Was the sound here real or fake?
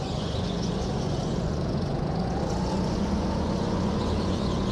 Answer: fake